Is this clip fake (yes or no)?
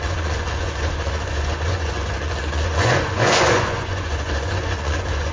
yes